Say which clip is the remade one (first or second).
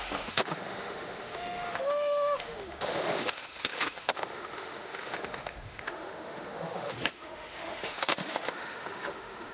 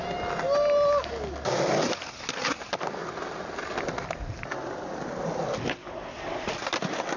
first